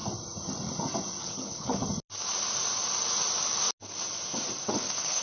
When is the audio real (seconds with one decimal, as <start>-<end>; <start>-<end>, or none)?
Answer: 0.0-1.2; 1.8-4.7